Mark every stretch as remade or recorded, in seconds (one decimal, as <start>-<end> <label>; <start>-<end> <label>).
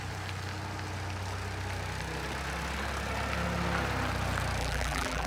0.0-4.6 recorded; 4.6-5.3 remade